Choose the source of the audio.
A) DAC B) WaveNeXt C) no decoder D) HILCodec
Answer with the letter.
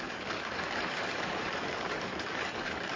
A